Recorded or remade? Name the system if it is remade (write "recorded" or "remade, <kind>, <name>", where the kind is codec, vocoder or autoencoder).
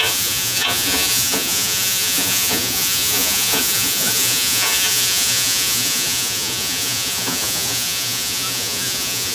remade, vocoder, Vocos